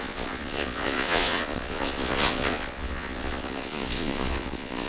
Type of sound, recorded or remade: remade